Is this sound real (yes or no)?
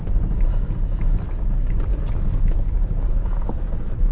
yes